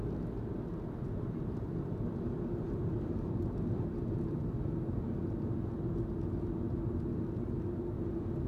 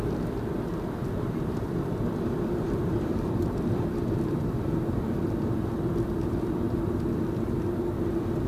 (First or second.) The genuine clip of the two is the first